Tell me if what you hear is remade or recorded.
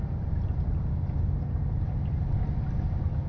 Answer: recorded